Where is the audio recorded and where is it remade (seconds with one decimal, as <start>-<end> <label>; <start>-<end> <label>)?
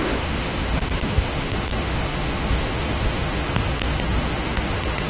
0.0-5.1 remade